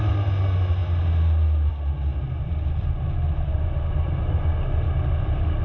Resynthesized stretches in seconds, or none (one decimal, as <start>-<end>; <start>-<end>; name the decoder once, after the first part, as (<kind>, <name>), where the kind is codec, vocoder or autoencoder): none